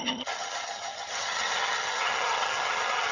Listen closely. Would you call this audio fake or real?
fake